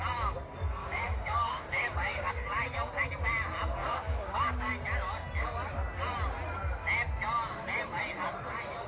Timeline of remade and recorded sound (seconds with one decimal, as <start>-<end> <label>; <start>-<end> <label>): 0.0-0.8 recorded; 0.8-2.3 remade; 2.3-3.8 recorded; 3.8-4.7 remade; 4.7-8.9 recorded